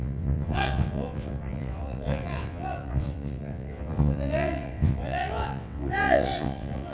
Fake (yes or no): yes